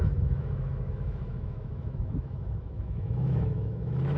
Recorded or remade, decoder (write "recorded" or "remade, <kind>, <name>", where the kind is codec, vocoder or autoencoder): remade, autoencoder, DAC-VAE